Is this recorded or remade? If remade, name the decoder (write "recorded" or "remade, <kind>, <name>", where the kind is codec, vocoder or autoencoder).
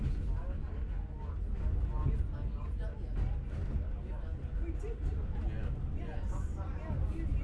recorded